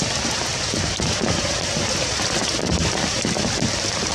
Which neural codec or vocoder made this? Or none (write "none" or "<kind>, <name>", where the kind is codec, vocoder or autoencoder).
vocoder, BigVGAN v2